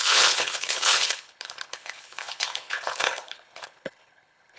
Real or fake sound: fake